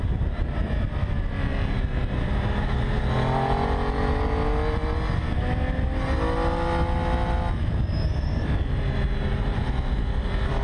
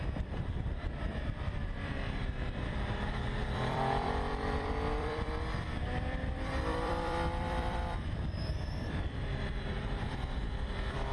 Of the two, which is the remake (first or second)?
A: second